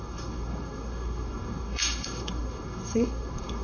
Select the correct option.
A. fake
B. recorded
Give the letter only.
A